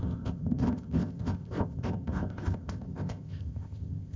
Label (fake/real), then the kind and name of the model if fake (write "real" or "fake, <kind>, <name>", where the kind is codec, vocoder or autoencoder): fake, codec, ZipCodec